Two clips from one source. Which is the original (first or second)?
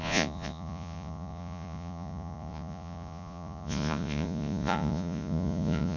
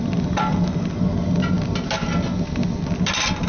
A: second